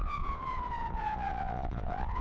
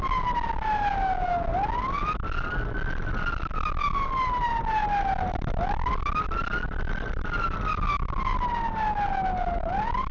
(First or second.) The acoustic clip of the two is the second